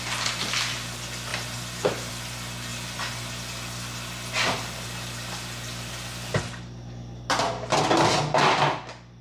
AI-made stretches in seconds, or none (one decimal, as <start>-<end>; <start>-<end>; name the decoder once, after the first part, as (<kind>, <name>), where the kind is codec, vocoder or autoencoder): none